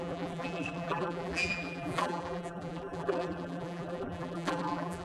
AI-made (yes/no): yes